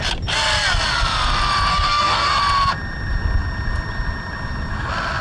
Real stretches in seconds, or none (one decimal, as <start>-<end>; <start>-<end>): 0.0-1.7; 2.4-5.2